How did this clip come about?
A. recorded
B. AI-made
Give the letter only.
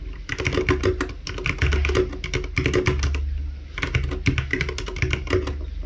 A